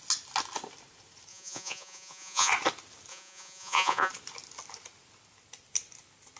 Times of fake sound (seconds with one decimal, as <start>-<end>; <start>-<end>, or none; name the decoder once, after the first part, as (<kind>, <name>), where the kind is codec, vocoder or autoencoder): 1.3-2.5 (vocoder, Vocos); 3.1-4.1